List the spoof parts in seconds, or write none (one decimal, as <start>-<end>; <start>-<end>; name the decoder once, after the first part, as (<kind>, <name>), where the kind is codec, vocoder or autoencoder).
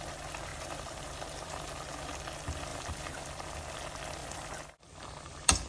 0.5-1.7 (vocoder, BigVGAN v2); 2.7-3.6; 4.2-5.7